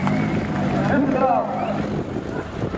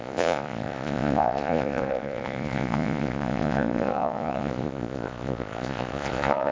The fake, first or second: second